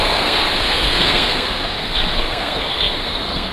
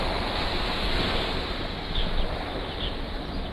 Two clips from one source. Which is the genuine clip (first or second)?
second